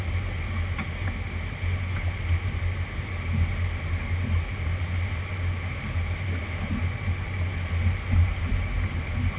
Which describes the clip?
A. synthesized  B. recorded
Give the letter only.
B